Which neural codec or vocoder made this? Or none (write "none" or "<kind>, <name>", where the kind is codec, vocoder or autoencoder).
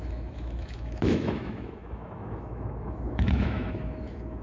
autoencoder, DAC-VAE